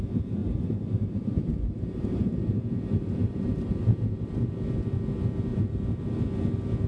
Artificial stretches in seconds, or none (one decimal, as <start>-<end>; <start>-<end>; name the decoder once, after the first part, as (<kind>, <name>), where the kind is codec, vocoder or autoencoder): 0.4-4.5 (vocoder, BigVGAN v2); 5.5-6.0